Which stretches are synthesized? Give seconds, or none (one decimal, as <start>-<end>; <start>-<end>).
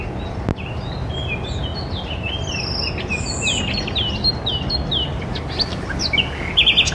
none